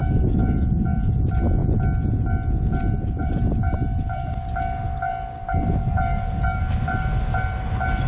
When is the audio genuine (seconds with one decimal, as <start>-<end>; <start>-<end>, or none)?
1.1-5.8; 6.6-8.1